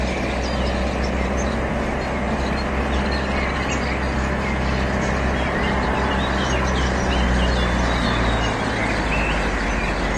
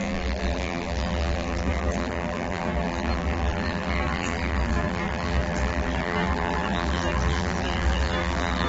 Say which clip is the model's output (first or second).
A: second